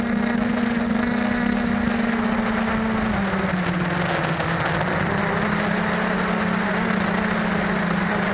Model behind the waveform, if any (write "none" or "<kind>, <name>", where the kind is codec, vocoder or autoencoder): none